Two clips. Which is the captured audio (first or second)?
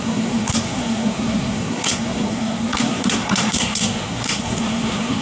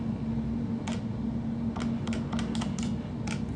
second